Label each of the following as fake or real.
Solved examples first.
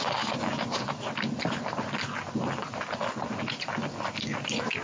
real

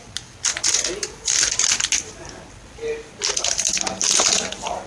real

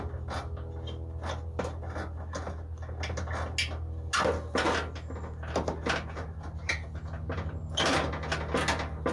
real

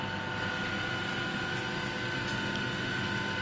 real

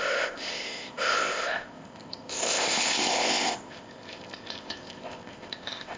fake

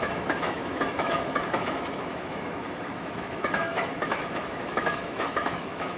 fake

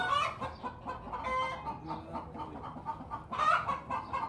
real